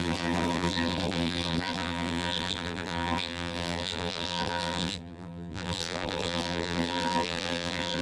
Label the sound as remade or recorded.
remade